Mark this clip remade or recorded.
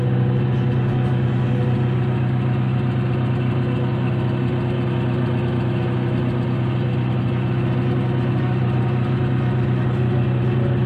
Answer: recorded